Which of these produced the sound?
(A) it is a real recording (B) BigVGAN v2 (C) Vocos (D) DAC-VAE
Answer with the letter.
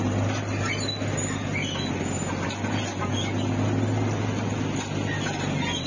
A